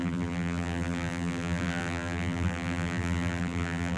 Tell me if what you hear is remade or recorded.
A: remade